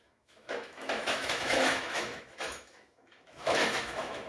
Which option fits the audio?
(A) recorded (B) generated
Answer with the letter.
B